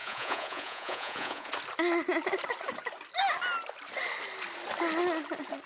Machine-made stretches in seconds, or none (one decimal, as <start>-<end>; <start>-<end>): 0.0-1.5